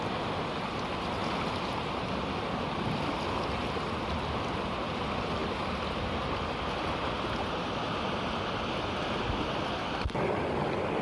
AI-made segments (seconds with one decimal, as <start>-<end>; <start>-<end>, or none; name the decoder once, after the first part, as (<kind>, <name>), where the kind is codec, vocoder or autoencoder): 1.2-2.2 (vocoder, BigVGAN v2)